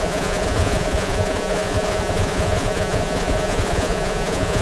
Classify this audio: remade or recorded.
remade